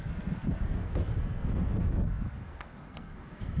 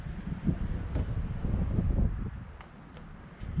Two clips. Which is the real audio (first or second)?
second